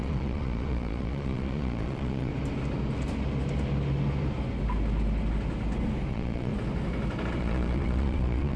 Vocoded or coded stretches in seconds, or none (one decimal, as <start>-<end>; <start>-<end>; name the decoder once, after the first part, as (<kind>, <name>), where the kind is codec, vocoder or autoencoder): 0.0-2.3 (vocoder, Vocos); 6.1-6.5; 7.4-8.6